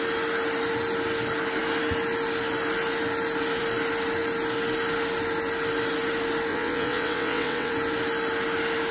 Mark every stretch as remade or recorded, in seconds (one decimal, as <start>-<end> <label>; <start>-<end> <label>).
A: 0.0-6.5 recorded; 6.5-7.7 remade; 7.7-8.9 recorded